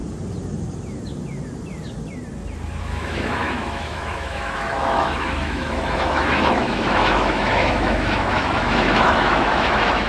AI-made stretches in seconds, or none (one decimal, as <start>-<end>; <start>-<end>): 2.8-10.1